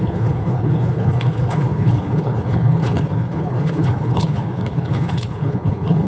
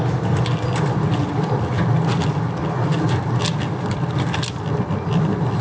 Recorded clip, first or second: second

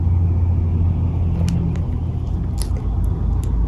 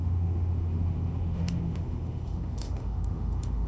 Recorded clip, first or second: first